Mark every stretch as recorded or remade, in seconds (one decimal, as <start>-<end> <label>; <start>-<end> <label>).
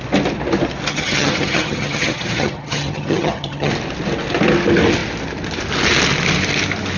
0.0-0.9 recorded; 0.9-3.7 remade; 3.7-7.0 recorded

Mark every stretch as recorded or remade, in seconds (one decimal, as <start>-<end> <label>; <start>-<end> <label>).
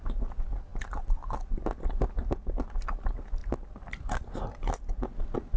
0.0-5.6 recorded